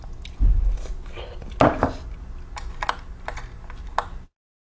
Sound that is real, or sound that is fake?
real